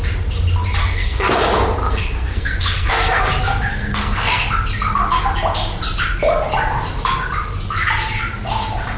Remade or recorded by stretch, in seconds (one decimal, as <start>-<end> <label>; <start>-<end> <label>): 0.0-0.8 recorded; 0.8-1.3 remade; 1.3-1.8 recorded; 1.8-3.2 remade; 3.2-3.7 recorded; 3.7-4.5 remade; 4.5-9.0 recorded